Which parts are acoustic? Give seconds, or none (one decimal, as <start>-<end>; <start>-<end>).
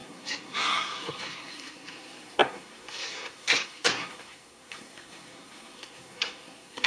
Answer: none